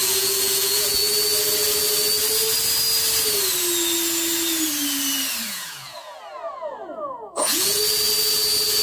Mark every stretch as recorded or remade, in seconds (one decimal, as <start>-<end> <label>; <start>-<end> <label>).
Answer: 0.0-1.0 remade; 1.0-5.5 recorded; 5.5-7.8 remade; 7.8-8.8 recorded